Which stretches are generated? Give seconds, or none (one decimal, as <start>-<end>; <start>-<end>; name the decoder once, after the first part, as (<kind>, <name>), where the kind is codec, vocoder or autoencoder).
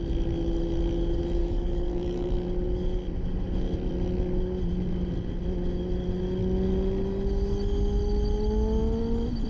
1.4-2.3 (codec, DAC)